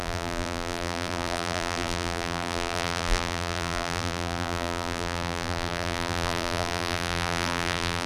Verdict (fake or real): fake